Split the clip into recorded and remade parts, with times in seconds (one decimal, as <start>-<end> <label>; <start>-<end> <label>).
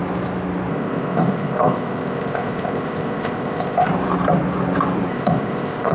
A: 0.0-0.7 recorded; 0.7-3.9 remade; 3.9-5.1 recorded; 5.1-5.9 remade